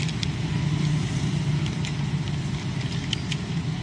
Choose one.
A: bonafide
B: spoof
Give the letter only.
A